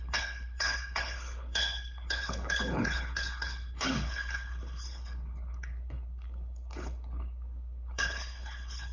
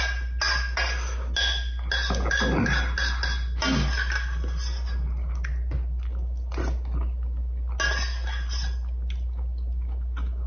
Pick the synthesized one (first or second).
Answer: first